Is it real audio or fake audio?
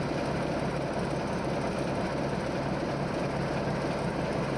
real